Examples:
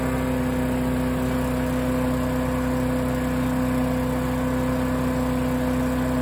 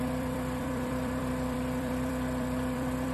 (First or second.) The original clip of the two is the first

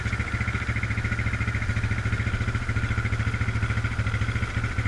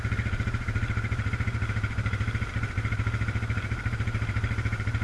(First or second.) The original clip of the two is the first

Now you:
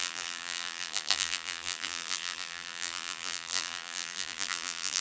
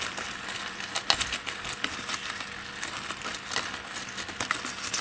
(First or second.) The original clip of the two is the second